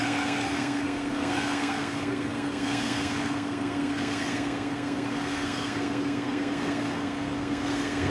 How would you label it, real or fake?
fake